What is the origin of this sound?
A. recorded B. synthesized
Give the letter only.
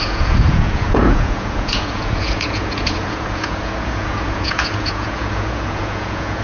B